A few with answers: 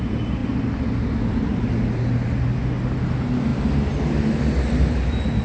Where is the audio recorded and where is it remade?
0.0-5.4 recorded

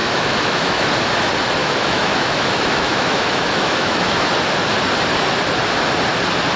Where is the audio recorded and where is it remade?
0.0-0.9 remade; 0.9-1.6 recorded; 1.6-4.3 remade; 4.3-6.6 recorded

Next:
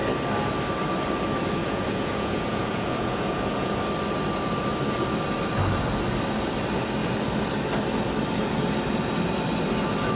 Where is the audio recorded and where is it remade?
0.0-1.6 recorded; 1.6-3.8 remade; 3.8-10.2 recorded

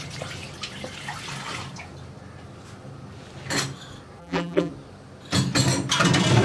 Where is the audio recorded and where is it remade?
0.0-4.2 recorded; 4.2-4.7 remade; 4.7-6.4 recorded

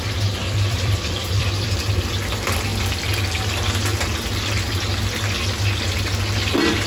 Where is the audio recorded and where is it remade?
0.0-0.4 recorded; 0.4-1.8 remade; 1.8-6.9 recorded

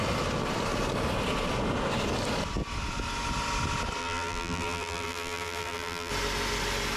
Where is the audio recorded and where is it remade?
0.0-4.0 recorded; 4.0-6.1 remade; 6.1-7.0 recorded

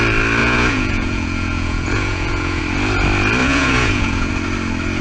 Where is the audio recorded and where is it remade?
0.0-0.4 recorded; 0.4-2.6 remade; 2.6-3.4 recorded; 3.4-4.3 remade; 4.3-5.0 recorded